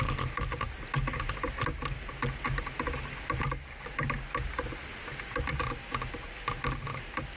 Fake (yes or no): no